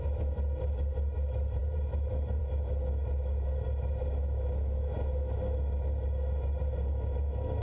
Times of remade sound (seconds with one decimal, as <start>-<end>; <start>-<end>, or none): 0.0-7.6